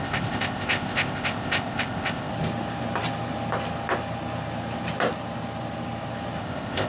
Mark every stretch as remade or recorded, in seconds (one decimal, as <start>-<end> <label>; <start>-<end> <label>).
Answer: 0.0-2.3 remade; 2.3-6.4 recorded; 6.4-6.9 remade